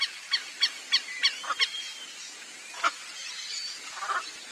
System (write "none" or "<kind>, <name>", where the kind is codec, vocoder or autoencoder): none